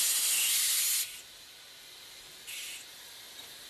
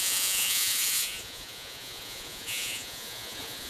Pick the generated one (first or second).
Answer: second